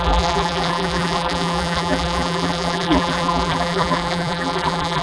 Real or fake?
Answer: fake